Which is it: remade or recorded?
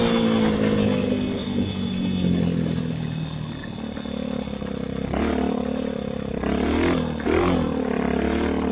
recorded